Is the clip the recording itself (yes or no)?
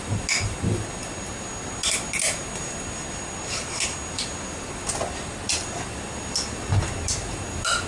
yes